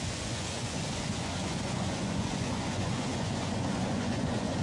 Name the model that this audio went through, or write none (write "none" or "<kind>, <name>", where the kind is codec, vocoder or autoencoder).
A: vocoder, Vocos